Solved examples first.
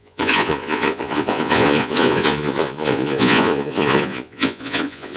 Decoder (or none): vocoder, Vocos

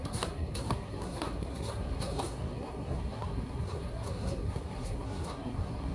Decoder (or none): codec, SNAC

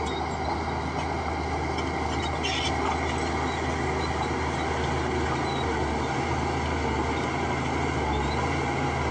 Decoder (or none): none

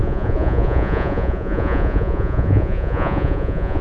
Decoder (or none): vocoder, Vocos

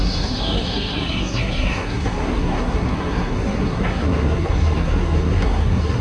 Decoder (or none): codec, SNAC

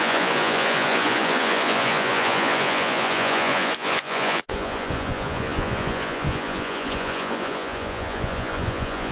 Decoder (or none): vocoder, Vocos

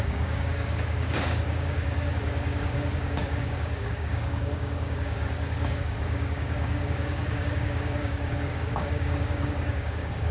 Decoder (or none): codec, DAC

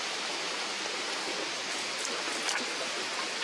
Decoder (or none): none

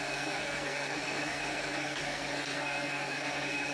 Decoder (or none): codec, SNAC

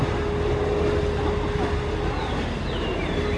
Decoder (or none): none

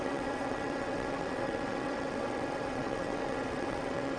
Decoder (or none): vocoder, WaveNeXt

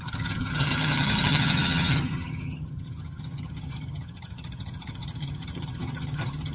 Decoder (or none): vocoder, HiFi-GAN